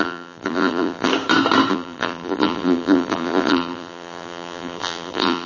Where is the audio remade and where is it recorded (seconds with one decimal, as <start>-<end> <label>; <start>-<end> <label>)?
0.0-1.1 remade; 1.1-1.7 recorded; 1.7-5.5 remade